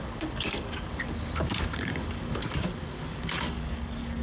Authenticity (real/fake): fake